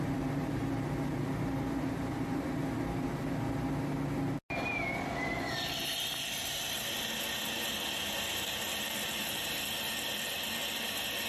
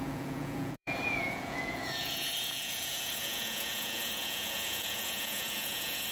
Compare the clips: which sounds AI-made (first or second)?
second